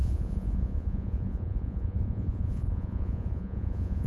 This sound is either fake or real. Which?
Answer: fake